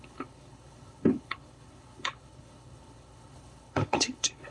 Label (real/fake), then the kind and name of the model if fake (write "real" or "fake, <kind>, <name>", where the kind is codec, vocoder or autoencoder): fake, codec, HILCodec